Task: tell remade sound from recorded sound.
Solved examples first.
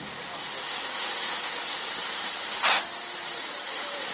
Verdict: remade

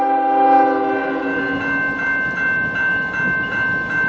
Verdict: recorded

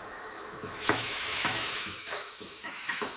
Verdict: remade